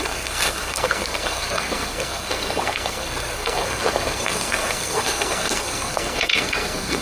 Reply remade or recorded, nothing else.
remade